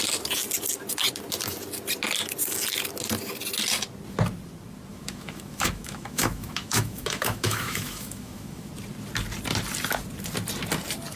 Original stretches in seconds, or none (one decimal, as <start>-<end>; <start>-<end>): 0.0-4.9; 8.7-11.2

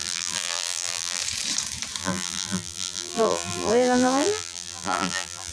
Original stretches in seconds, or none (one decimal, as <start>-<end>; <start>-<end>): 1.2-2.0

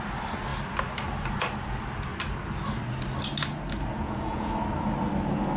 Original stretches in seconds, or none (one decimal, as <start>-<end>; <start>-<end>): 0.0-3.9; 4.5-5.6

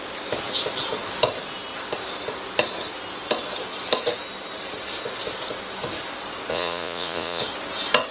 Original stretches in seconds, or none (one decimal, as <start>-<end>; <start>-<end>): 0.0-6.5; 7.4-8.1

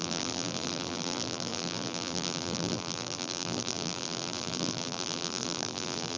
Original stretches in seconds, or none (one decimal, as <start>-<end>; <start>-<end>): none